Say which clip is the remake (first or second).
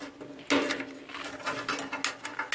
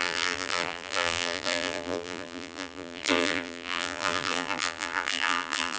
second